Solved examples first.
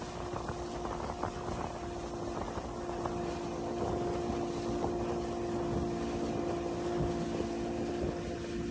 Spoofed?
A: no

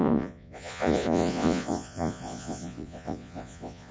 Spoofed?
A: yes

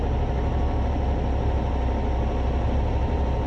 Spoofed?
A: no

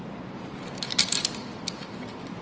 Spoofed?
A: no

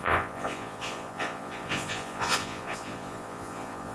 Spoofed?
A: yes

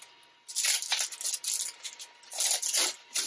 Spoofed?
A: no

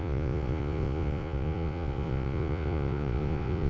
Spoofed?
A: yes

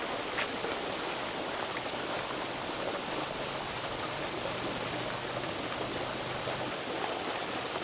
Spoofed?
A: no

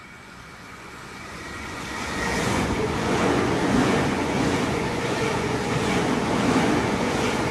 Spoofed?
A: yes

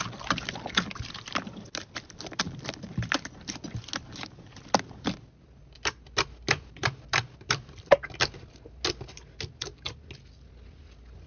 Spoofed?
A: no